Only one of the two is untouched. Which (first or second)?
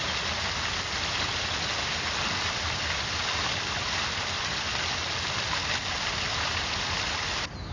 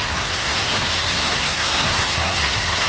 first